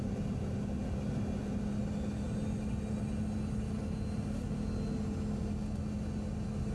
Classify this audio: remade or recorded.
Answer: recorded